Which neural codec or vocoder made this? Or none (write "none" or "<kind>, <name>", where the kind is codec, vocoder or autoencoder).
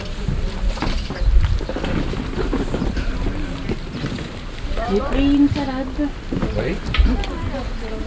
none